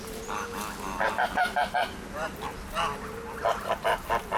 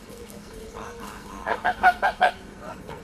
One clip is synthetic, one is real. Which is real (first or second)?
first